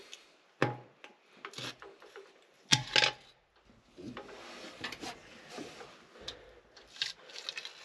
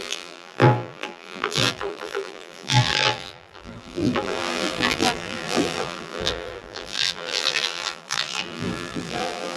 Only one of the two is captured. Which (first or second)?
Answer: first